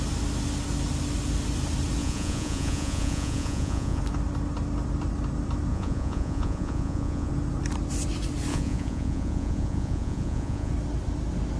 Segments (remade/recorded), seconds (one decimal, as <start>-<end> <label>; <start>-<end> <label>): 0.0-2.0 recorded; 2.0-4.0 remade; 4.0-5.7 recorded; 5.7-7.3 remade; 7.3-8.5 recorded; 8.5-10.7 remade; 10.7-11.6 recorded